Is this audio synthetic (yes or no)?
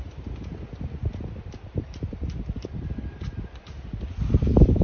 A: no